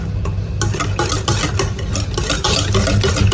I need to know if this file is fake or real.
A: real